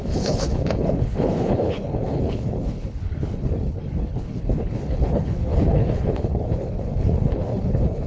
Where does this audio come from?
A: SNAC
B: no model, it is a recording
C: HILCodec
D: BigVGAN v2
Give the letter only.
C